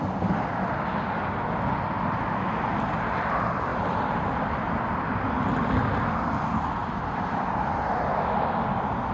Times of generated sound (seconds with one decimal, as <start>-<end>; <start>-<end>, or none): 3.7-4.6; 6.8-7.8